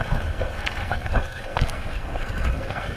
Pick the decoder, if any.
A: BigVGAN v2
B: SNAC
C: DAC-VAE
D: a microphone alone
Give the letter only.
B